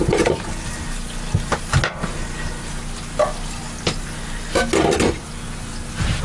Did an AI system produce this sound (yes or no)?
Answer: no